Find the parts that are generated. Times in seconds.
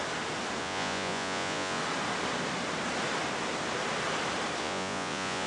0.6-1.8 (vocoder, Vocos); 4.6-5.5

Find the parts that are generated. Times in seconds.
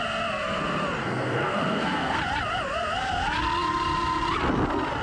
1.0-2.2 (codec, SNAC)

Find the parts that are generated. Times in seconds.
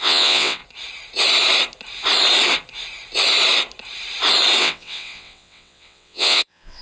0.0-0.6 (vocoder, WaveNeXt); 4.6-6.8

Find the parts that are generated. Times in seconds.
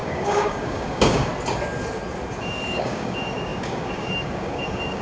0.0-1.3 (codec, DAC); 2.4-5.0